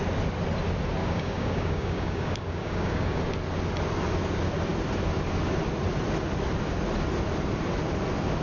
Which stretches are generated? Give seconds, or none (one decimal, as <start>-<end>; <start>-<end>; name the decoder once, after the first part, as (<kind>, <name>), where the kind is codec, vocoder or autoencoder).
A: 1.0-3.2 (codec, DAC)